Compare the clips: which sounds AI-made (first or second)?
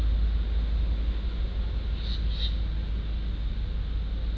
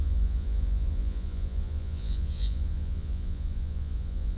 second